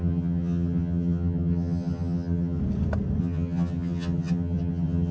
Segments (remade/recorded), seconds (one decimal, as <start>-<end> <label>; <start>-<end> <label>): 0.0-2.6 remade; 2.6-3.2 recorded; 3.2-5.1 remade